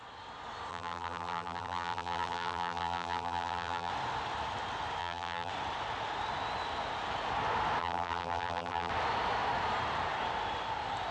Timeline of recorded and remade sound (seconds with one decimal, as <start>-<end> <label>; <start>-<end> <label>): 0.0-0.7 recorded; 0.7-3.9 remade; 3.9-5.0 recorded; 5.0-5.5 remade; 5.5-7.8 recorded; 7.8-8.9 remade; 8.9-11.1 recorded